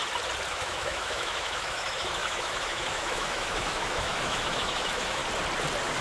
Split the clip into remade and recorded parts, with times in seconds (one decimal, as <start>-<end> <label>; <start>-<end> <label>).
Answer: 0.0-0.5 recorded; 0.5-5.2 remade; 5.2-6.0 recorded